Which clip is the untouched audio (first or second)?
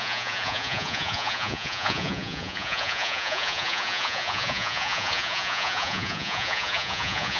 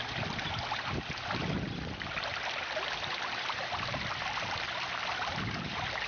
second